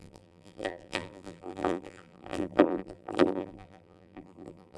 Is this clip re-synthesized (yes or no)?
yes